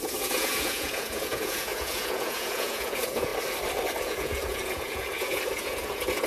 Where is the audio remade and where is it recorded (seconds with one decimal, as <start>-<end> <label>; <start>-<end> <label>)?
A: 0.0-3.3 remade; 3.3-4.0 recorded; 4.0-6.3 remade